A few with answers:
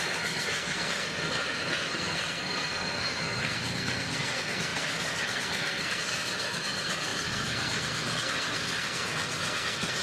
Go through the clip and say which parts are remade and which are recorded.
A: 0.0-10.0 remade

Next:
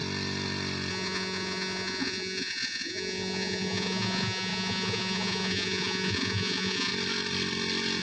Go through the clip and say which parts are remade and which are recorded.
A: 0.0-0.9 recorded; 0.9-6.9 remade; 6.9-8.0 recorded

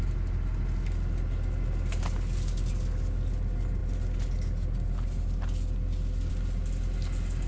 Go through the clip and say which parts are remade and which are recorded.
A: 0.0-7.5 recorded